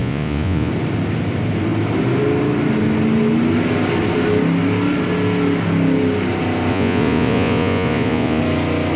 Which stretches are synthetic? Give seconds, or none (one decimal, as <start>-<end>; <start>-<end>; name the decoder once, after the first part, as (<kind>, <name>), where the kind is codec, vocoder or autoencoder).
0.0-0.7 (vocoder, Vocos); 6.7-8.4